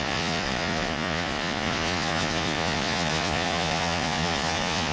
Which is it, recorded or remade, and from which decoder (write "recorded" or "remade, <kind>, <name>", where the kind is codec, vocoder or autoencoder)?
remade, vocoder, Vocos